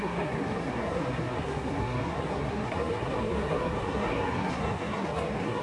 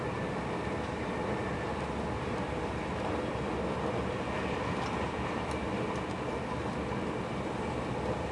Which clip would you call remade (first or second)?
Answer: first